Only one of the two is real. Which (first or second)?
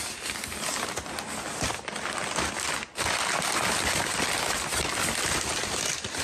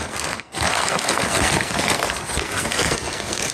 first